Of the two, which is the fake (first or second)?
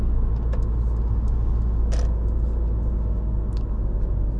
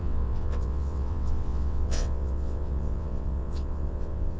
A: second